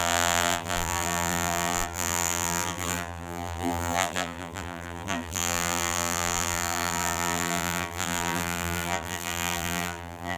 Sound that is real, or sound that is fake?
fake